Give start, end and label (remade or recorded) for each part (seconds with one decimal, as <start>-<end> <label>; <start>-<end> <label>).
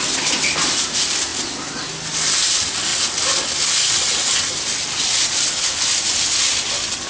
0.0-7.1 recorded